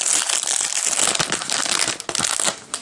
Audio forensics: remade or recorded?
recorded